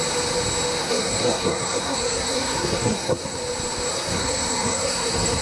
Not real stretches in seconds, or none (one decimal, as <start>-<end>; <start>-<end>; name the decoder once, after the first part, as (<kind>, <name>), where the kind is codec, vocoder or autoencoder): 0.8-3.4 (codec, SNAC); 3.9-5.4